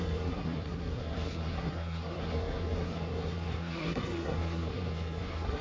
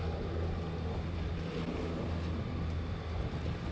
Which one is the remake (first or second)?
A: first